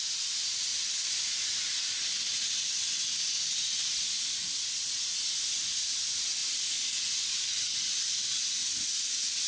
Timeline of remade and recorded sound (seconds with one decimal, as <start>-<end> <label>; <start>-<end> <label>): 0.0-9.5 recorded